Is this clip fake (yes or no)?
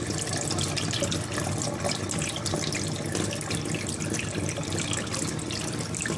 no